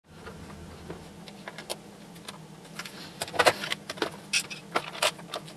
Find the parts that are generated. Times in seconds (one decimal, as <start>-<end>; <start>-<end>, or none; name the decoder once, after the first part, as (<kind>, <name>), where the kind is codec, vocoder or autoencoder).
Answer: none